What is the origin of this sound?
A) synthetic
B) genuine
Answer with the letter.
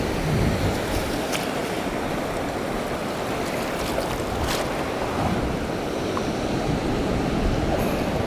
B